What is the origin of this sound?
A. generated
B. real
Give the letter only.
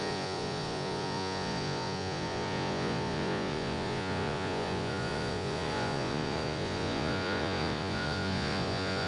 A